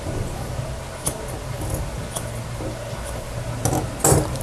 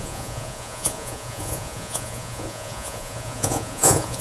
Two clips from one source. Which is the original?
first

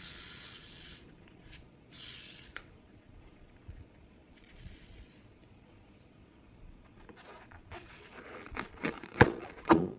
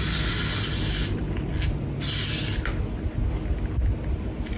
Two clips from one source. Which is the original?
second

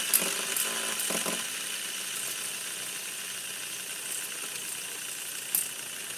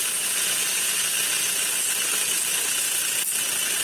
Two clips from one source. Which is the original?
first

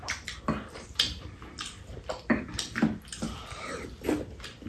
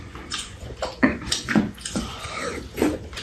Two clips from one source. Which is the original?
first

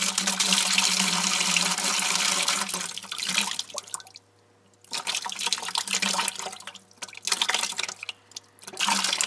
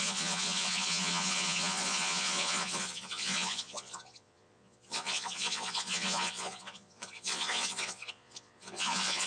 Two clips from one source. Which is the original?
first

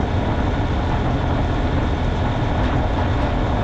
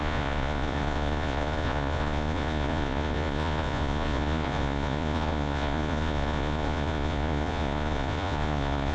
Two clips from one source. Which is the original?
first